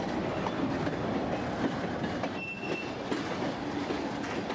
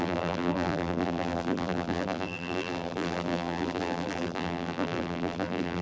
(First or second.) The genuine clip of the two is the first